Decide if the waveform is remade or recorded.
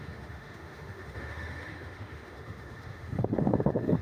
remade